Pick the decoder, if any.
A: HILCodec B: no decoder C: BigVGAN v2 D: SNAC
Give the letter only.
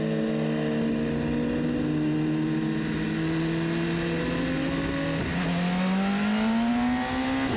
B